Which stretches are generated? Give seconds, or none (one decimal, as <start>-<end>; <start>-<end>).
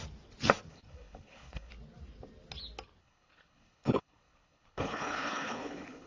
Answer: 0.7-1.7; 3.0-6.1